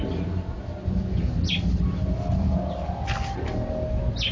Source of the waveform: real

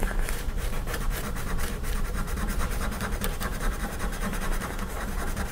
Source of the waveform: fake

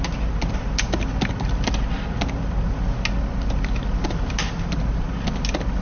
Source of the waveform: real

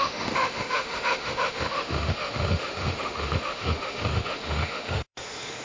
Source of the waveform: fake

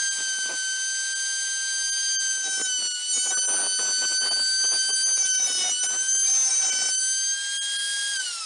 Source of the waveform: real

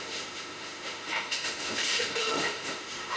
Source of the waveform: fake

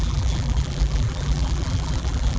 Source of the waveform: fake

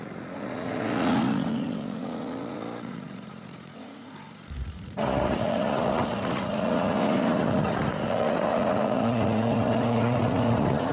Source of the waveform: fake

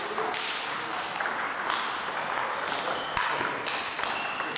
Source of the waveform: real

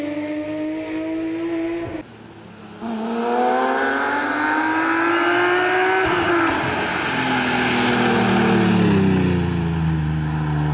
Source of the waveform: real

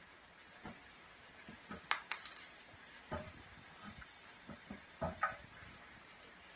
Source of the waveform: real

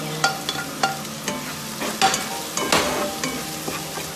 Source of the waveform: real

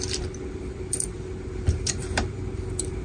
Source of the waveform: fake